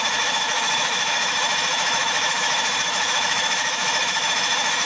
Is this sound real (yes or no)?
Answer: no